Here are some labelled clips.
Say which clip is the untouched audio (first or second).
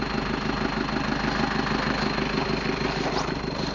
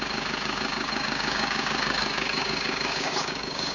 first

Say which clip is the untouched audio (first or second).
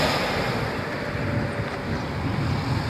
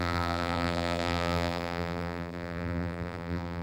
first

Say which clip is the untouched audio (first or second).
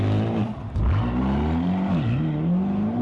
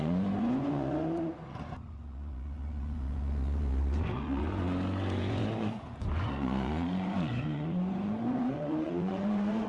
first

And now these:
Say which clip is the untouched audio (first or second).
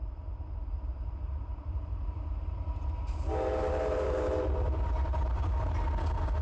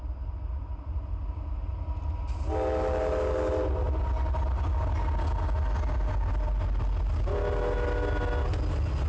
second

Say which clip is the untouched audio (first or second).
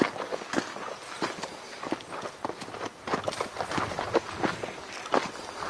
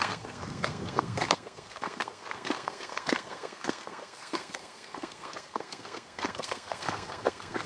first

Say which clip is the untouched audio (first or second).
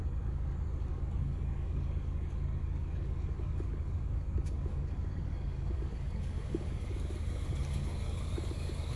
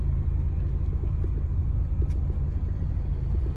second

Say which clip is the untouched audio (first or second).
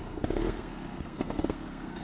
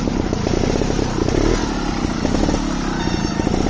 second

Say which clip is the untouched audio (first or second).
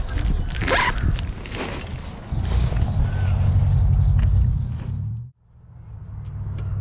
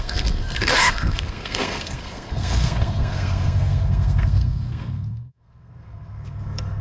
first